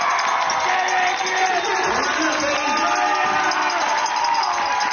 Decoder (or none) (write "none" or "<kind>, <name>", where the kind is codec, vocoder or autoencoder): none